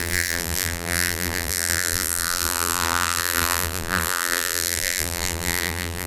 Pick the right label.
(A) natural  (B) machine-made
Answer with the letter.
B